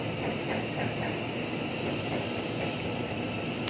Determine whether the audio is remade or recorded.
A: recorded